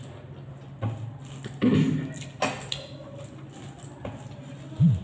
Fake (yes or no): no